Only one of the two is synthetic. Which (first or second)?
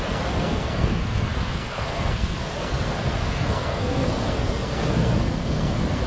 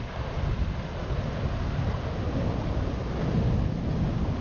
first